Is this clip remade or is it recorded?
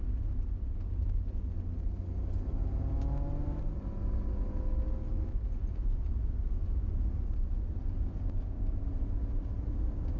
recorded